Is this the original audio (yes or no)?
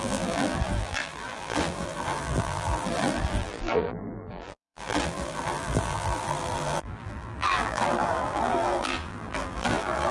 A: no